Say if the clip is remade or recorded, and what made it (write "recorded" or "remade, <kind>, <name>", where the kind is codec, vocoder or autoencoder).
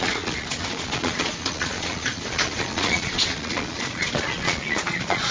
remade, vocoder, Vocos